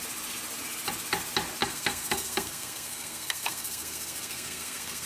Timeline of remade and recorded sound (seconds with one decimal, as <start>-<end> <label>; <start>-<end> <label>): 0.0-1.6 recorded; 1.6-5.1 remade